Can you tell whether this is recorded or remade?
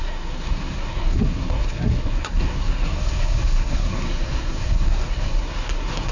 remade